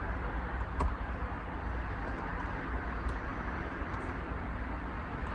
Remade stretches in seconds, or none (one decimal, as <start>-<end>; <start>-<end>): none